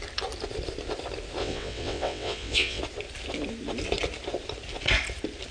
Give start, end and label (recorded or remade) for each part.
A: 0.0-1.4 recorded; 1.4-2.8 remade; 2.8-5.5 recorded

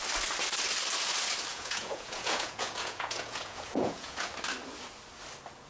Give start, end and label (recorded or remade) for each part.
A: 0.0-1.5 recorded; 1.5-4.3 remade; 4.3-5.7 recorded

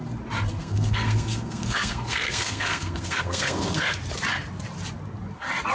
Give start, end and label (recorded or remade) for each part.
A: 0.0-0.6 recorded; 0.6-4.0 remade; 4.0-5.7 recorded

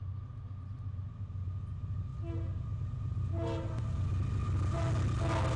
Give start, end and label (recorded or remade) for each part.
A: 0.0-5.6 recorded

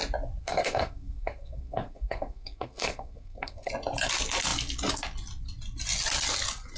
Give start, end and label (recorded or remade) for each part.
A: 0.0-0.4 recorded; 0.4-3.7 remade; 3.7-6.8 recorded

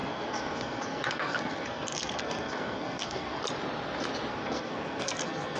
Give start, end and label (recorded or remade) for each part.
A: 0.0-3.4 remade; 3.4-4.3 recorded; 4.3-5.6 remade